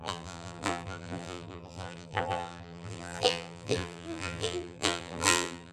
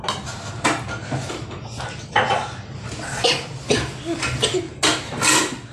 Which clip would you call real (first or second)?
second